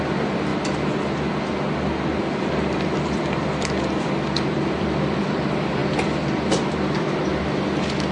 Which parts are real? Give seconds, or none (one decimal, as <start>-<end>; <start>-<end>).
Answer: 0.5-2.2